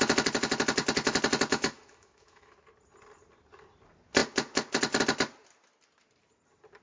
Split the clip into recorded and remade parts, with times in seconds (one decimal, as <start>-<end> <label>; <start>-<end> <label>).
0.0-1.5 recorded; 1.5-2.5 remade; 2.5-6.8 recorded